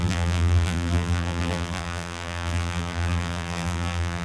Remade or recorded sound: remade